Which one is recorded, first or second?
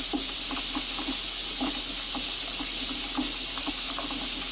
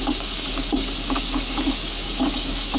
first